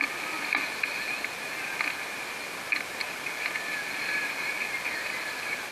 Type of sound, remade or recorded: recorded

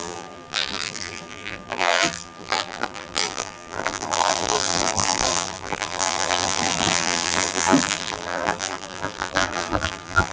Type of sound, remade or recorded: remade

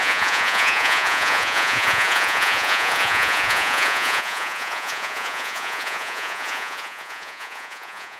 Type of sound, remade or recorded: remade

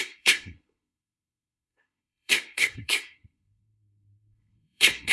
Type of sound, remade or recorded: remade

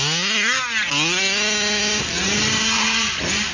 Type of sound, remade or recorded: recorded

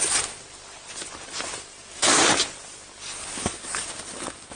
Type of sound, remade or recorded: recorded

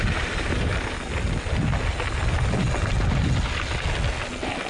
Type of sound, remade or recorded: recorded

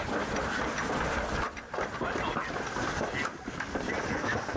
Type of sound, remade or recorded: recorded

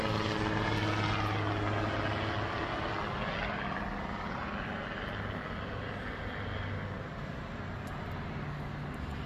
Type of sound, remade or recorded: recorded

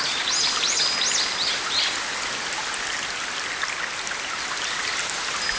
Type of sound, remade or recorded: recorded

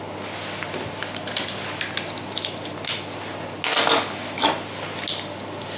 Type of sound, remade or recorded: recorded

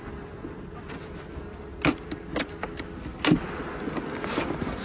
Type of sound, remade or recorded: recorded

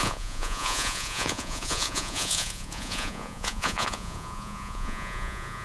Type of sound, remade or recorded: remade